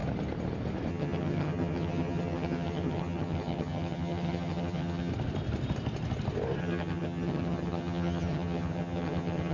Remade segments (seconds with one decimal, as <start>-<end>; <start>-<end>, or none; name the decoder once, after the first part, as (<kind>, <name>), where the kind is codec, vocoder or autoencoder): 0.9-5.1 (vocoder, HiFi-GAN); 6.6-9.5